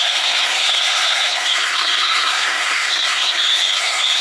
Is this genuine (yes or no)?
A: no